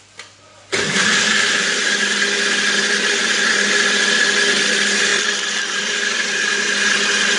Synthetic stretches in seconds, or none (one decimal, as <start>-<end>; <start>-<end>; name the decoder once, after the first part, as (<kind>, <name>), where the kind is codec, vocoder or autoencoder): 5.1-6.5 (vocoder, BigVGAN v2)